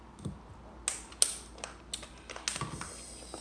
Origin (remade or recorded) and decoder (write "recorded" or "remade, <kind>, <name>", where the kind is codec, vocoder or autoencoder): recorded